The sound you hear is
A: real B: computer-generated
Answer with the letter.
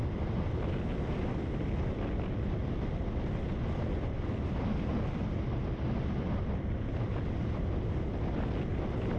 A